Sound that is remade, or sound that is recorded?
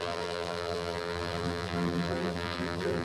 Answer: remade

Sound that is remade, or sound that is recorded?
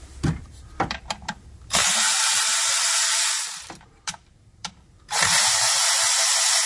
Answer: remade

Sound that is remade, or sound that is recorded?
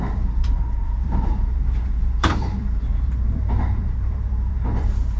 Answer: remade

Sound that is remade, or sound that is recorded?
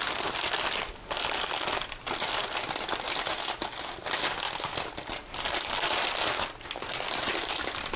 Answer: recorded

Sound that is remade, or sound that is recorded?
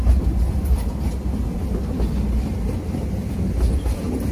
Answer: recorded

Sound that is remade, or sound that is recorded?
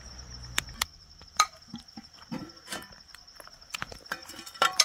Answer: remade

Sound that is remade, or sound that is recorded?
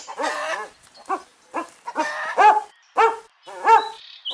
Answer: recorded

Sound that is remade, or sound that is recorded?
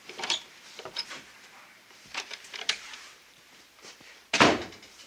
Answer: remade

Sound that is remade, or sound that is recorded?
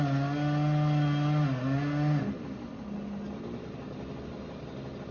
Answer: recorded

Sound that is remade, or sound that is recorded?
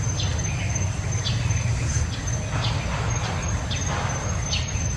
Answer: recorded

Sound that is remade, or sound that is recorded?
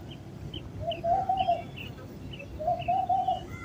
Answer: recorded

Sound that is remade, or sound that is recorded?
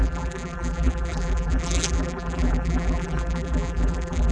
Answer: remade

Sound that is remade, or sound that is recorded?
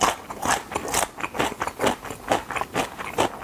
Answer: recorded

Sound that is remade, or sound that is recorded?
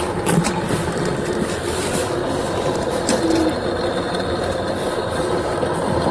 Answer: remade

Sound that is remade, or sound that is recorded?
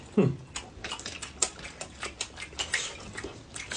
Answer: recorded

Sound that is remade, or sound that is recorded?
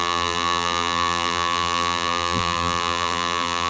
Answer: remade